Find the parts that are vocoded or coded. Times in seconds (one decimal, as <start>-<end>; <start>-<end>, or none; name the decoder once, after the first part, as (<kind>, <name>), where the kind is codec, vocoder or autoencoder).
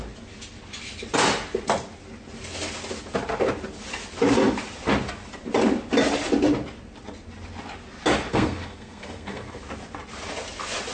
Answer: 8.3-9.6 (codec, SNAC)